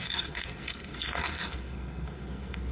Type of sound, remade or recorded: remade